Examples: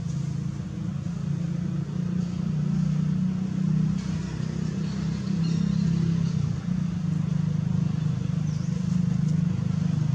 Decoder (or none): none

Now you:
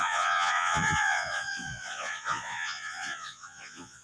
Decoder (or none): vocoder, Vocos